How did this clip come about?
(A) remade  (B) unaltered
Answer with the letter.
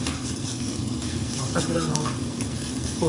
A